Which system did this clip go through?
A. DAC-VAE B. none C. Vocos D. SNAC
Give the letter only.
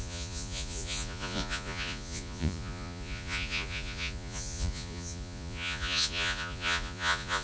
C